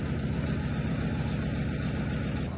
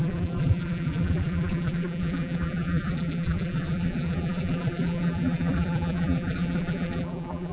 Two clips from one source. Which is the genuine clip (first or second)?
first